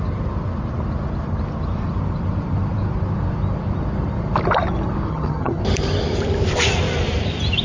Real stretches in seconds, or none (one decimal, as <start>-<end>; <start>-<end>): 0.0-5.1; 5.6-7.6